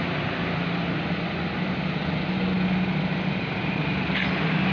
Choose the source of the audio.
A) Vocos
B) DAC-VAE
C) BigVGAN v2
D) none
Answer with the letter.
D